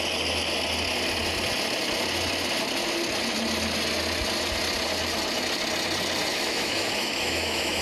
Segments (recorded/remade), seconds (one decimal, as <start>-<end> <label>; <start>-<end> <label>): 0.0-6.3 recorded; 6.3-7.8 remade